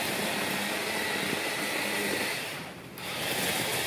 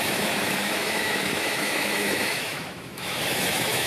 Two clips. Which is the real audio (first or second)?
first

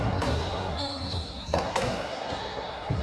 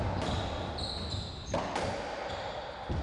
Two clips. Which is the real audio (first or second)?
second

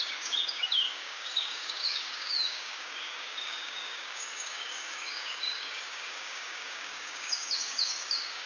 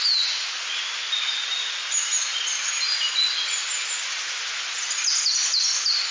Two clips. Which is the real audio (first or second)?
second